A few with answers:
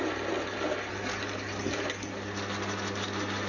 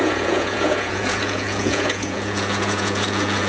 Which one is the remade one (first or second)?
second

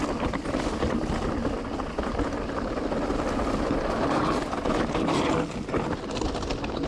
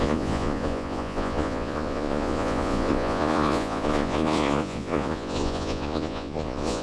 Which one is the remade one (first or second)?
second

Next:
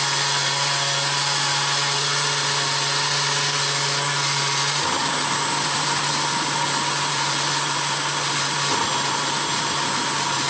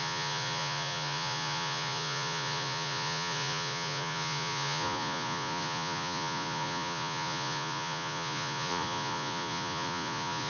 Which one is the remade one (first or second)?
second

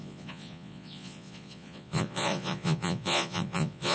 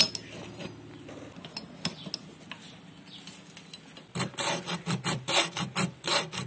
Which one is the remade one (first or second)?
first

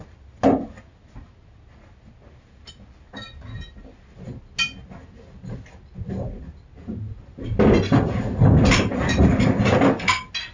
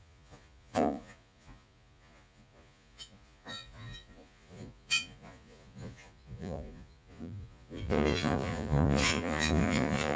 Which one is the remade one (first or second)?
second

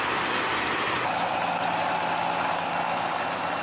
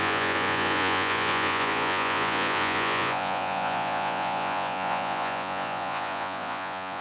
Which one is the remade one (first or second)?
second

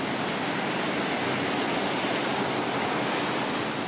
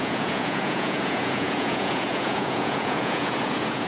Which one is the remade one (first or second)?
second